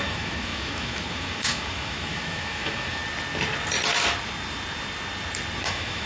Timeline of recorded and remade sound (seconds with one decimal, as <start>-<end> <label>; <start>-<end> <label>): 0.0-3.0 remade; 3.0-5.6 recorded; 5.6-6.1 remade